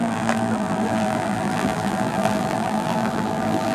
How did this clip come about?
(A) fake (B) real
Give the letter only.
A